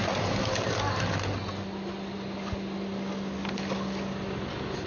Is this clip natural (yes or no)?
yes